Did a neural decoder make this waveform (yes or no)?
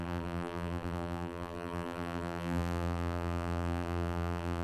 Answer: yes